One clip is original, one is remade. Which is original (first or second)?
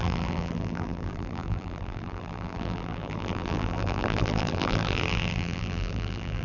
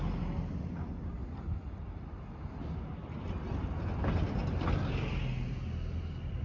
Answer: second